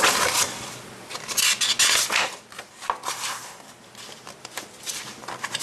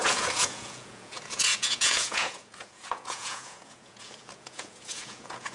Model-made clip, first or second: second